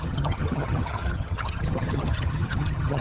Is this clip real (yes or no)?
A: no